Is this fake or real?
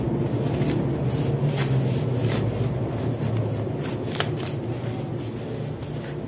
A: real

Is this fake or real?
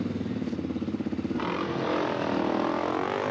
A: real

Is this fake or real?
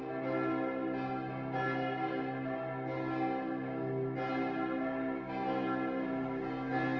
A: real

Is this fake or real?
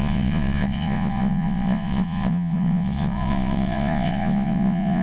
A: fake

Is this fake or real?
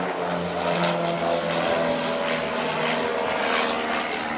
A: real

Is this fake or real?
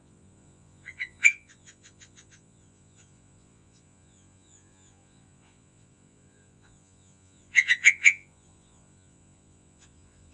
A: fake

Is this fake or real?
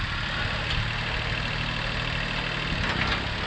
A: real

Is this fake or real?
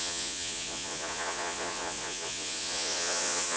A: fake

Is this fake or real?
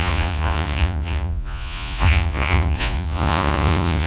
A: fake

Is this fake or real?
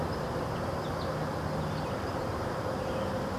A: real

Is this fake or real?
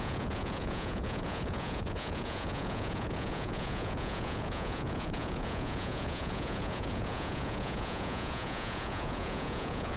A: fake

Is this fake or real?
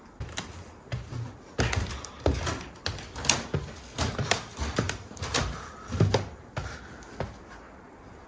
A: real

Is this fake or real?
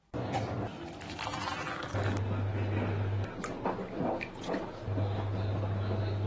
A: real